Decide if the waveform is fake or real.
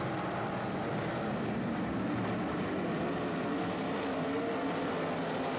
real